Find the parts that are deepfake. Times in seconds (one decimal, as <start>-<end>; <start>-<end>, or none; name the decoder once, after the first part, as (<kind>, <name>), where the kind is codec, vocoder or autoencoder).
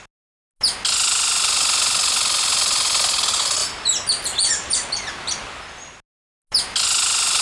none